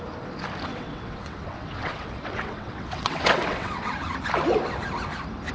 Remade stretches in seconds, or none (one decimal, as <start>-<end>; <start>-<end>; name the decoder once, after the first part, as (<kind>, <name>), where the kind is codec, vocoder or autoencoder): 0.7-4.0 (vocoder, WaveNeXt)